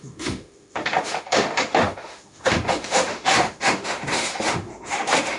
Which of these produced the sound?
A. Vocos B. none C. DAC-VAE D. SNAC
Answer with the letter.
C